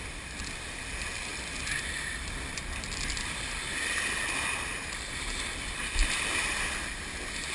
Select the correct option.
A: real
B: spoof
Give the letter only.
A